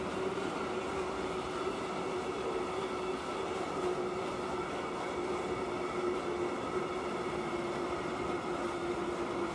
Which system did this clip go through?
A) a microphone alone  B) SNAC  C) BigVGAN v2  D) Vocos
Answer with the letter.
A